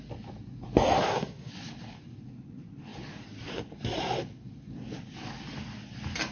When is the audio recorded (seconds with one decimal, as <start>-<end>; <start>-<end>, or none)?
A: 0.0-1.0; 1.5-6.3